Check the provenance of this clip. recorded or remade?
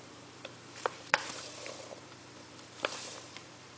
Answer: remade